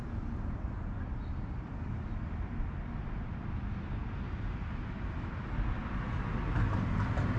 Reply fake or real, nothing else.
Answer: real